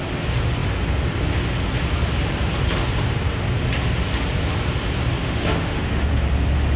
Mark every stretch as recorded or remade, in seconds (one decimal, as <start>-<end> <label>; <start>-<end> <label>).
0.0-5.2 recorded; 5.2-6.1 remade; 6.1-6.8 recorded